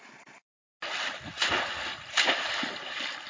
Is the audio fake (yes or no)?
no